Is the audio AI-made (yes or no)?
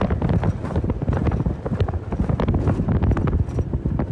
no